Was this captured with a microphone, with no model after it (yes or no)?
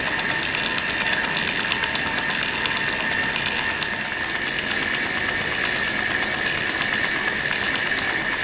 yes